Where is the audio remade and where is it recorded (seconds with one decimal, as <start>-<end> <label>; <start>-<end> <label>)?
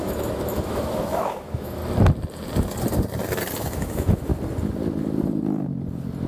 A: 0.0-1.8 remade; 1.8-3.6 recorded; 3.6-4.3 remade; 4.3-6.3 recorded